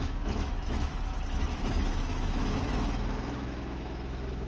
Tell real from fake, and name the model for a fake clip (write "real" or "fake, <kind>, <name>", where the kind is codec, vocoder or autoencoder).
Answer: fake, autoencoder, DAC-VAE